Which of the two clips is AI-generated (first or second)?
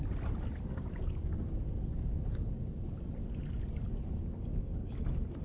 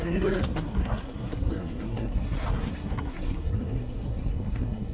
second